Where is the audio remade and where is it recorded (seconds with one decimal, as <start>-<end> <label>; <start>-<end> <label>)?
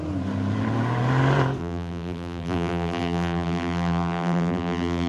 0.0-1.6 recorded; 1.6-5.1 remade